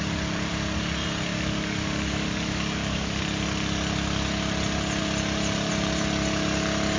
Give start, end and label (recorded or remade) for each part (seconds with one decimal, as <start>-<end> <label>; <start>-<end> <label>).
0.0-1.3 recorded; 1.3-3.2 remade; 3.2-7.0 recorded